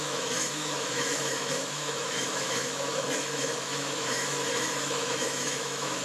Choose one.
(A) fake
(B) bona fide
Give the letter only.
A